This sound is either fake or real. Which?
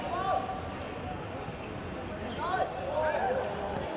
real